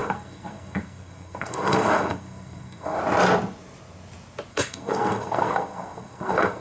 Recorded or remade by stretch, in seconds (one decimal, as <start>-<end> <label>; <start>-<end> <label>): 0.0-3.0 remade; 3.0-4.5 recorded; 4.5-6.6 remade